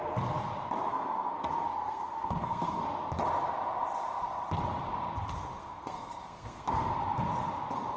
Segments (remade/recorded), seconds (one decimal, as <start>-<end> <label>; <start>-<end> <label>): 0.0-0.9 recorded; 0.9-2.8 remade; 2.8-5.6 recorded; 5.6-6.9 remade; 6.9-8.0 recorded